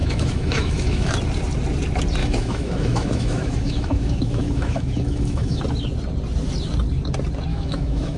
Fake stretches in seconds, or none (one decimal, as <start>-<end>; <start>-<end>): 0.0-1.1; 2.2-5.6; 7.5-8.2